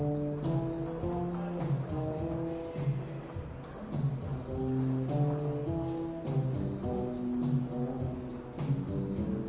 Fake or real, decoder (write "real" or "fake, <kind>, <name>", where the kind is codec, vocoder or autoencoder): real